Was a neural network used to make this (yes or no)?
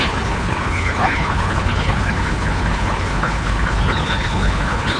yes